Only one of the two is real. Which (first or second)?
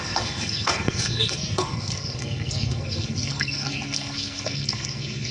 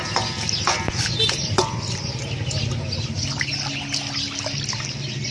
second